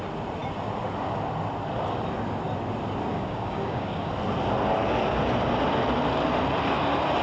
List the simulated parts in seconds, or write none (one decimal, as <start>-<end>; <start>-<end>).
3.1-4.1